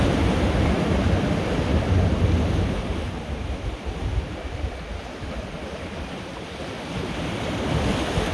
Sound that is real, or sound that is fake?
real